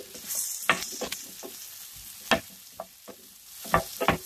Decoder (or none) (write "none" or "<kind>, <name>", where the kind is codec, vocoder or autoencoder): none